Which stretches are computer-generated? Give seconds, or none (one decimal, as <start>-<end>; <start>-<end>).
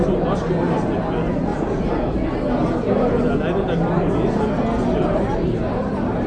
none